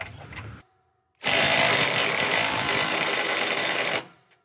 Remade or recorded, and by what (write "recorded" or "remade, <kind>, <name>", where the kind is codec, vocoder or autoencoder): remade, vocoder, BigVGAN v2